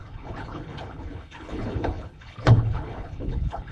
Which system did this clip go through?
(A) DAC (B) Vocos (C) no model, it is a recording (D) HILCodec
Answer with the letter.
D